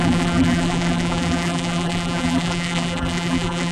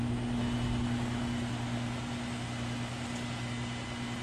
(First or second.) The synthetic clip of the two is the first